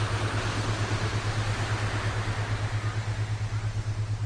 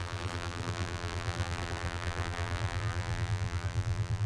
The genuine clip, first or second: first